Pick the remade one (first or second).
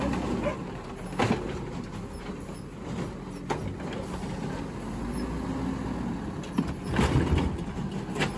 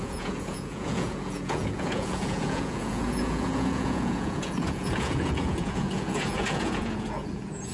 second